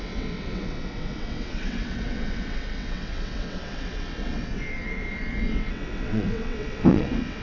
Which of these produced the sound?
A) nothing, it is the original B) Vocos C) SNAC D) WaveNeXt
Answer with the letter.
D